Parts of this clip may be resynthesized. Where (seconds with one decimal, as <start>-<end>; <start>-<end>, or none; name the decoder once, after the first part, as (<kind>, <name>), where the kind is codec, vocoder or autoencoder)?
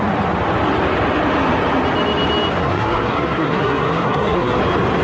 2.6-4.6 (codec, SNAC)